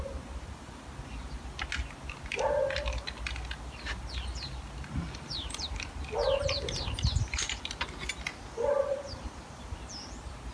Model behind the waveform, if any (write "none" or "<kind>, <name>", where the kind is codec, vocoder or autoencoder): none